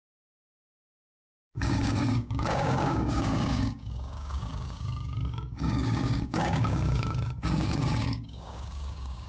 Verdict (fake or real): fake